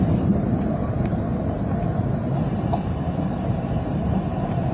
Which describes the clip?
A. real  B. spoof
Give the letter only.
B